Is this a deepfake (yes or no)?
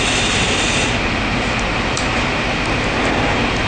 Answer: no